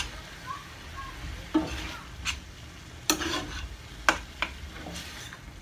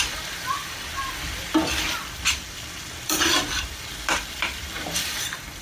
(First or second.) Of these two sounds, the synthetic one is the second